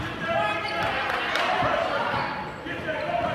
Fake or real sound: real